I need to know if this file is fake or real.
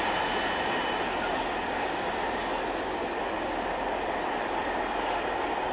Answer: real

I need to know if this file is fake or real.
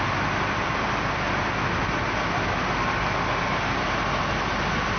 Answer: real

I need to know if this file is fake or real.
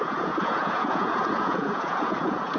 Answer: fake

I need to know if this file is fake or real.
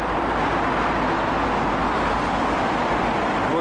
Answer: real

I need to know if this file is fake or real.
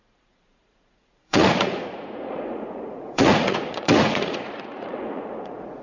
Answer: fake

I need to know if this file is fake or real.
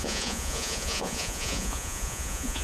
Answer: fake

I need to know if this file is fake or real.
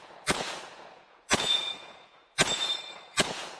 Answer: fake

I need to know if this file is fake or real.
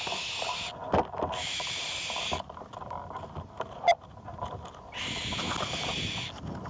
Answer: real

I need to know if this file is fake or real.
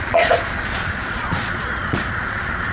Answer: fake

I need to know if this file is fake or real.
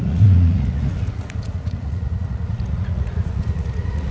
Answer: fake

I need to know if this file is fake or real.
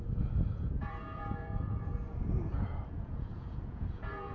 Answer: fake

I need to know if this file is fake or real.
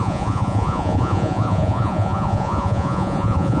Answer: fake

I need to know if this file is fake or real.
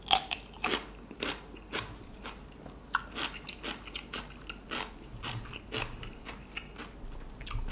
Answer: real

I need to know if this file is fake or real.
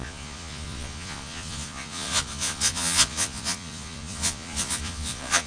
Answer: fake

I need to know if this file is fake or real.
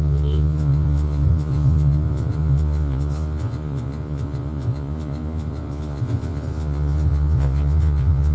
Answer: fake